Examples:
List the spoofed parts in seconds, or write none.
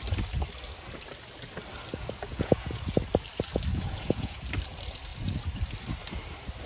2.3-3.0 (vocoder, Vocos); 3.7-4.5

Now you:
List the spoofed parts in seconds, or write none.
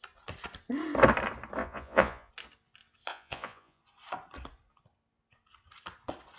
1.6-2.3 (vocoder, Vocos); 3.1-3.8